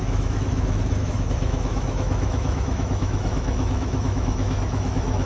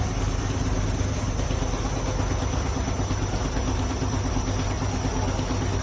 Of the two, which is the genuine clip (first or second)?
second